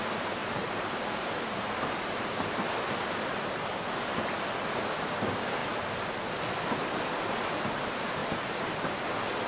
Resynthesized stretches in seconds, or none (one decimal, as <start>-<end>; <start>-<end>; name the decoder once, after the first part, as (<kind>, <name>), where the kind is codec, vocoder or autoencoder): 0.4-2.6 (vocoder, BigVGAN v2); 5.6-6.3; 8.2-9.1

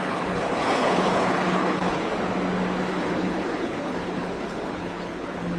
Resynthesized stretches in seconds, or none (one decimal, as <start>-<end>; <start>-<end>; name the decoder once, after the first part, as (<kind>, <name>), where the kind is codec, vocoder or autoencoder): 0.0-2.1 (codec, HILCodec); 2.9-5.6

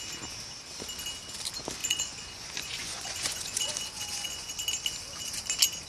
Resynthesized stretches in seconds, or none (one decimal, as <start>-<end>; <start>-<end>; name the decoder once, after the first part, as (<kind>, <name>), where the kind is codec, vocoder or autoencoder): 1.8-4.5 (vocoder, Vocos)